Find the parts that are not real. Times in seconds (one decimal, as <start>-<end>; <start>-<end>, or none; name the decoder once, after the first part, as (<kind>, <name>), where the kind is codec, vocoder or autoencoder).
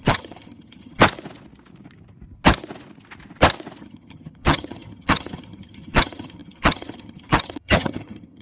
0.0-1.0 (vocoder, HiFi-GAN); 3.8-8.4